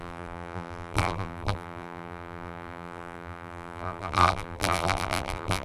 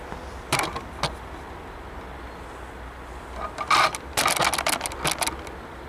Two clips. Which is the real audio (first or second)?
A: second